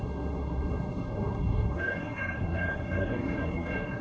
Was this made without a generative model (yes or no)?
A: no